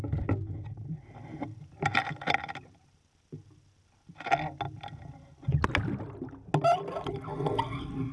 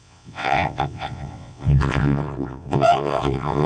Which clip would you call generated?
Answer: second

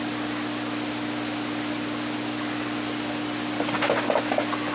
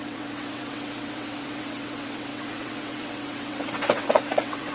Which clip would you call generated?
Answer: second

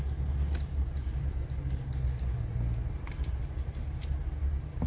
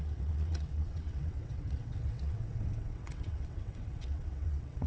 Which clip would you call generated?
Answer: second